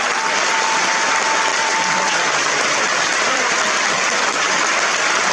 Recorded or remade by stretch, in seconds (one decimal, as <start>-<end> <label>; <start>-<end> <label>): 0.0-1.5 recorded; 1.5-4.7 remade; 4.7-5.3 recorded